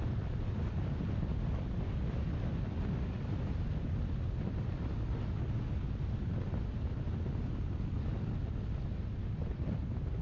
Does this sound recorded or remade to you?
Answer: recorded